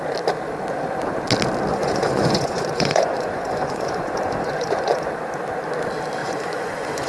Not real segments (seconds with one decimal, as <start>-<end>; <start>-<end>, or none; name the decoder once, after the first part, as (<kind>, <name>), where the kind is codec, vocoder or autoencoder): 1.7-5.1 (vocoder, Vocos); 6.2-7.1